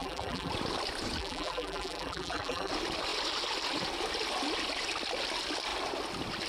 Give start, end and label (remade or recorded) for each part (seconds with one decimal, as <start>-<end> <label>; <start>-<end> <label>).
0.0-0.5 remade; 0.5-1.2 recorded; 1.2-2.7 remade; 2.7-6.5 recorded